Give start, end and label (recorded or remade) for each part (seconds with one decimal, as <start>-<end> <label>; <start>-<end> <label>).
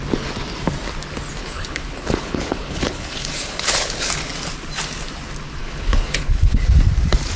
0.0-1.4 recorded; 1.4-4.1 remade; 4.1-5.6 recorded; 5.6-6.6 remade; 6.6-7.4 recorded